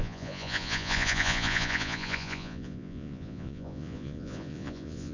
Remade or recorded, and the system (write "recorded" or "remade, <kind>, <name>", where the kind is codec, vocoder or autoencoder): remade, vocoder, Vocos